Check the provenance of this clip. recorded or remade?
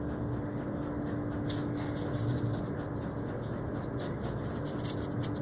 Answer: recorded